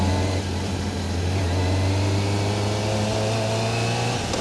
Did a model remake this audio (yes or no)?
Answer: no